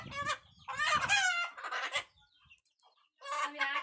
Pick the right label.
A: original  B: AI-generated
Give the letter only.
A